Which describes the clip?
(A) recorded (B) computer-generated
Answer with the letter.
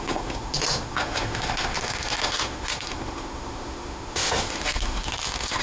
B